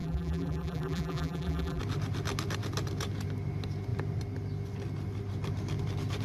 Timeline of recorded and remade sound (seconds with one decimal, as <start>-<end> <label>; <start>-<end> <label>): 0.0-1.8 remade; 1.8-6.2 recorded